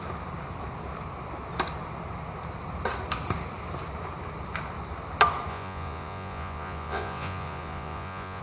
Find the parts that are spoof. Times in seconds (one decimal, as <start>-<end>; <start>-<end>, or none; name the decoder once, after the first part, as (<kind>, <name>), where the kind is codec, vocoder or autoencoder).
5.5-8.4 (vocoder, Vocos)